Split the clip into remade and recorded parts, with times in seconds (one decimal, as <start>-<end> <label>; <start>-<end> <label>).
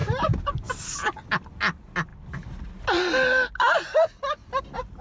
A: 0.0-5.0 recorded